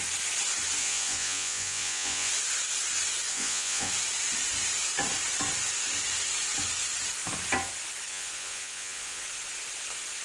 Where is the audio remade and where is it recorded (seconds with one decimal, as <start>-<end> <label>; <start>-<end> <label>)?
0.0-0.8 recorded; 0.8-2.3 remade; 2.3-3.3 recorded; 3.3-3.9 remade; 3.9-8.1 recorded; 8.1-9.2 remade; 9.2-10.2 recorded